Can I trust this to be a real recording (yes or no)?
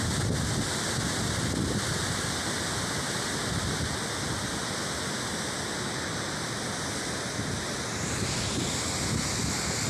yes